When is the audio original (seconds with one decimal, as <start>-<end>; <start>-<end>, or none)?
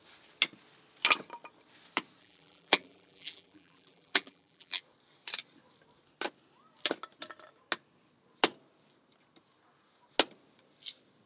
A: 0.0-2.2; 4.8-11.3